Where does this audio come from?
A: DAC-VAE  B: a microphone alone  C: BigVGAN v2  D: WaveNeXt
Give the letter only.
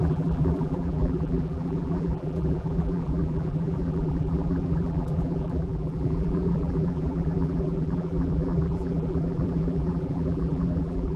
C